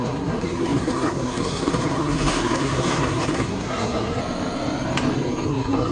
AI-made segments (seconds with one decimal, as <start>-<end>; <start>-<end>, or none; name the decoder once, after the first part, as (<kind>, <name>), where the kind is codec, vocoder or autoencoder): 0.0-4.2 (codec, SNAC); 5.5-5.9